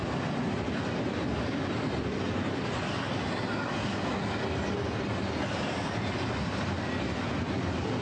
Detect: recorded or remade recorded